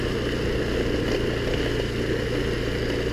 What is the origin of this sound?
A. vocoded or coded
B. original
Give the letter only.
B